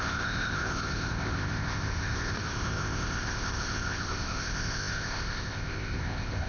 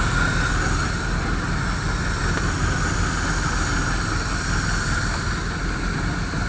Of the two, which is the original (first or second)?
second